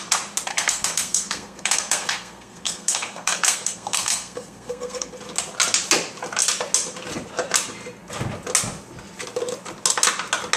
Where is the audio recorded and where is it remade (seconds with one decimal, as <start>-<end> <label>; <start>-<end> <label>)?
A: 0.0-0.5 recorded; 0.5-5.1 remade; 5.1-10.6 recorded